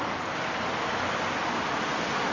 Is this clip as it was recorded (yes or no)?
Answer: yes